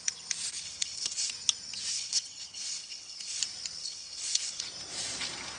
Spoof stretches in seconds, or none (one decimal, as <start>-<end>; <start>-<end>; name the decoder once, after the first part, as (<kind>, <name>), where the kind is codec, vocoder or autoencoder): 0.5-1.3 (codec, HILCodec); 1.9-3.4; 3.8-4.6

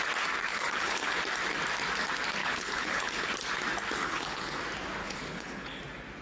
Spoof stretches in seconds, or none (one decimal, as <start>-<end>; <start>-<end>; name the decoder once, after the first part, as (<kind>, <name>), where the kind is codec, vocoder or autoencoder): 0.5-1.2 (codec, HILCodec); 2.4-3.3; 4.0-4.6; 5.0-5.8

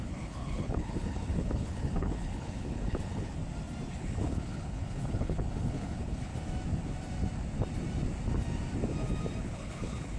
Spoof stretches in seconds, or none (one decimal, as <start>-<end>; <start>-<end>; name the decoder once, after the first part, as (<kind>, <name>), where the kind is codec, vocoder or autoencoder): 0.0-3.4 (codec, HILCodec); 4.0-6.3; 9.4-10.2